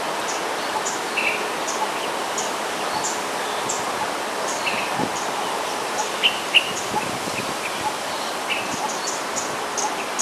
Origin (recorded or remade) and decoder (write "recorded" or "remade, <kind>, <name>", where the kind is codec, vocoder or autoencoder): recorded